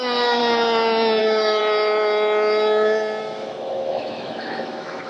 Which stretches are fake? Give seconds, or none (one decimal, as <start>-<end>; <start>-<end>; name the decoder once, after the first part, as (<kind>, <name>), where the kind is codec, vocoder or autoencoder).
0.0-0.4 (autoencoder, DAC-VAE); 1.2-1.6; 3.2-5.1